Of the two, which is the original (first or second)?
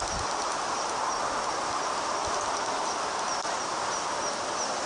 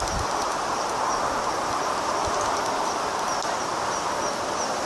first